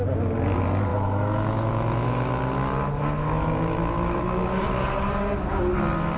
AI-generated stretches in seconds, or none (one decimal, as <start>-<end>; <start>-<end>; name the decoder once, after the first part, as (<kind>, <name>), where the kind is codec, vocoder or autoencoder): 0.9-4.6 (autoencoder, DAC-VAE)